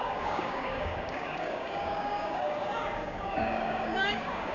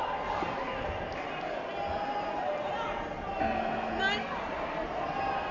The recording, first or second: second